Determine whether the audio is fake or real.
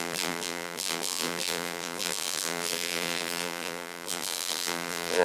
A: fake